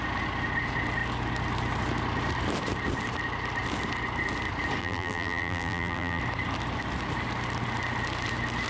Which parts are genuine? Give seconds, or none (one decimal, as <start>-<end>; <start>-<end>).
0.0-4.8; 6.2-8.7